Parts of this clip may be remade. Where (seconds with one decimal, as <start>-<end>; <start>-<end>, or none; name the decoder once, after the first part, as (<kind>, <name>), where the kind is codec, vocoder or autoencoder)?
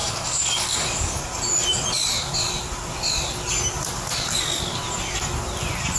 0.0-1.2 (codec, DAC)